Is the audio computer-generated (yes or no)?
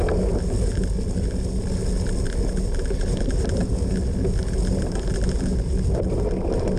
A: no